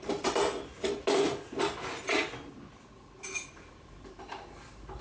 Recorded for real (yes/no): yes